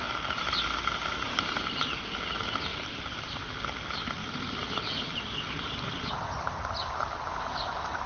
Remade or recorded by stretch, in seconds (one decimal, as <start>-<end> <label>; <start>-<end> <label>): 0.0-1.1 recorded; 1.1-2.1 remade; 2.1-2.7 recorded; 2.7-3.6 remade; 3.6-4.2 recorded; 4.2-8.1 remade